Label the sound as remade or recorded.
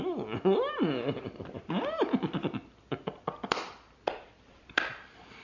recorded